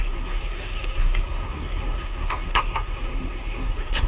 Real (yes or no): no